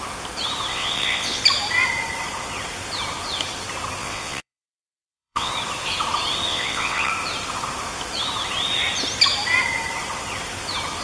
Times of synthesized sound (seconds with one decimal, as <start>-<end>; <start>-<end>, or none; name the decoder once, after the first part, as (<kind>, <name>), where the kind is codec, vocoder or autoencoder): 0.7-1.4 (vocoder, WaveNeXt); 4.0-5.5; 6.5-7.1